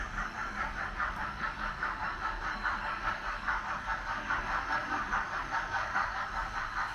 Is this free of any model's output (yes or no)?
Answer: no